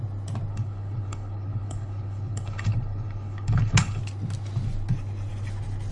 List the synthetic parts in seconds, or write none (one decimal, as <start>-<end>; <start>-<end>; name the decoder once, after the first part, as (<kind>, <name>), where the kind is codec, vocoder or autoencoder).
0.5-4.0 (codec, HILCodec)